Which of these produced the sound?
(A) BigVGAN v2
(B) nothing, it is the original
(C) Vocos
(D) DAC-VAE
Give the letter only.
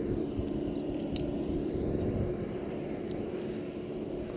A